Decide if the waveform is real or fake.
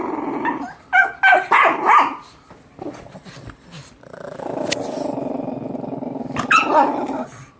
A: real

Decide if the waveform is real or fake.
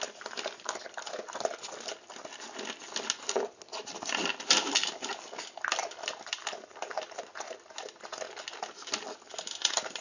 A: real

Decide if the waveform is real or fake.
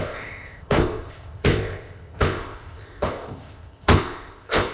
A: fake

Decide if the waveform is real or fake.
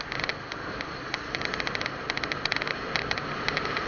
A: real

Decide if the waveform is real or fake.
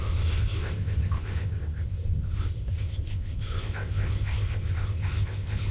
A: fake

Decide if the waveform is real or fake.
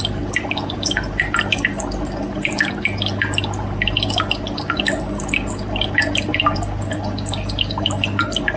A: real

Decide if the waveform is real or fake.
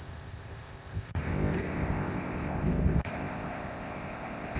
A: fake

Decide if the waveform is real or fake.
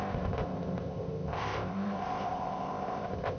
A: fake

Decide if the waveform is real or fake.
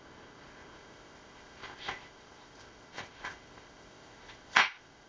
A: fake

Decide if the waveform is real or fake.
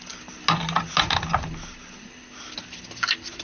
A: real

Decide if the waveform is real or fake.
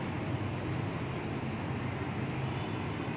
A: real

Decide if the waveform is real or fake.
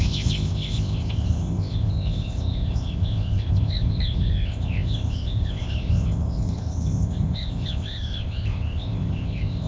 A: fake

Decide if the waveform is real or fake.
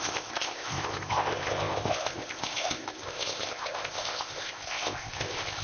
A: fake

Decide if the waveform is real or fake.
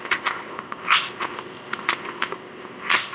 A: fake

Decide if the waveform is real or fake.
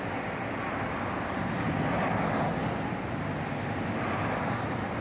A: real